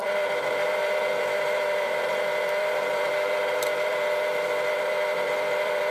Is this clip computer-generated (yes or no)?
yes